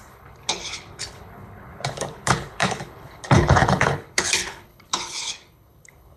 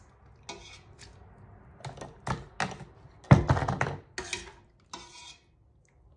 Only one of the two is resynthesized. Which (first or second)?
first